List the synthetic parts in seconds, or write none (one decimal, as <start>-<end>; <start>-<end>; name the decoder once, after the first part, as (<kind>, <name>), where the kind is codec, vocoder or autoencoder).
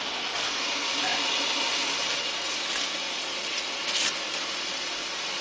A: none